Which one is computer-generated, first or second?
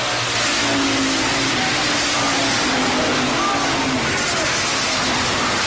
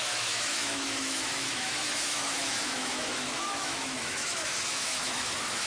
second